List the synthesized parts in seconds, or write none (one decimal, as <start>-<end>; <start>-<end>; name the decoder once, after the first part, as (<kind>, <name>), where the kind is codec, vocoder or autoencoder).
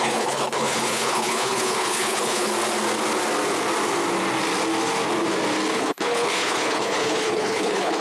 0.0-2.5 (codec, HILCodec); 5.7-8.0